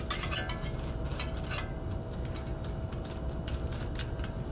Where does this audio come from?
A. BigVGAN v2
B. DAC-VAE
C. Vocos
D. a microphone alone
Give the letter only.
D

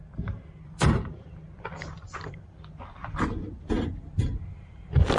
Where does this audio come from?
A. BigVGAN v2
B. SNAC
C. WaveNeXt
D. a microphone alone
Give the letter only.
A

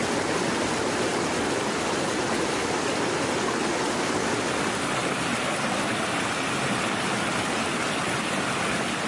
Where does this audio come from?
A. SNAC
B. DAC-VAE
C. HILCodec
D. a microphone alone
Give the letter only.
D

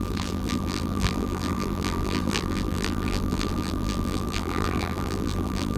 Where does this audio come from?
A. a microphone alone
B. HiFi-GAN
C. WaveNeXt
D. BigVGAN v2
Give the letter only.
D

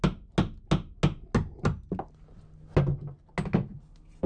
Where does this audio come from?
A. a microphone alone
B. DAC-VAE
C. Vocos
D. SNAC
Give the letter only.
A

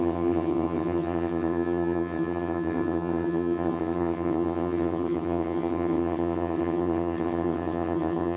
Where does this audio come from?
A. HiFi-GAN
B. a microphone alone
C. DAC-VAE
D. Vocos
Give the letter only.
A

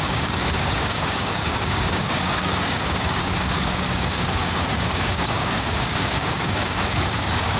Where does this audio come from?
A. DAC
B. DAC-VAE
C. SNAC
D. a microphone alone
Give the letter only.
A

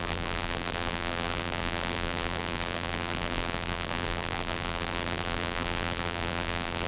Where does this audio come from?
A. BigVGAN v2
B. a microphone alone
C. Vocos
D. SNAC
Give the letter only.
A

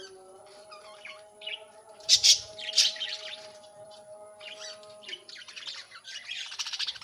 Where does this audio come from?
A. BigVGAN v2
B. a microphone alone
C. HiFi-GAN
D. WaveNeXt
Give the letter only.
A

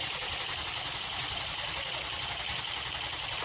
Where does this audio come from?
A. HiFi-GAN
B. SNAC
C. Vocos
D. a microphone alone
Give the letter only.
D